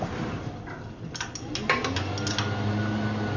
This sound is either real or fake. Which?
real